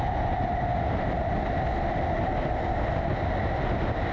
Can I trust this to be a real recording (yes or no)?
yes